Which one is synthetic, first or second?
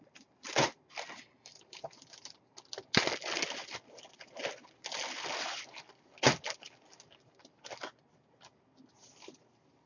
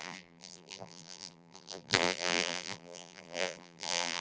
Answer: second